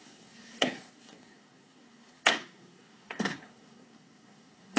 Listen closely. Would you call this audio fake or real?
fake